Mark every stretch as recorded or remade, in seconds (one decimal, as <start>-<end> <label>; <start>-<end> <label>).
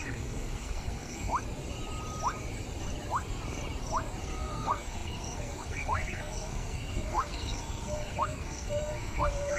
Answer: 0.0-1.3 remade; 1.3-4.2 recorded; 4.2-9.6 remade